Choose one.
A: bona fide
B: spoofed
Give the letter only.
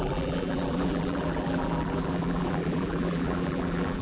B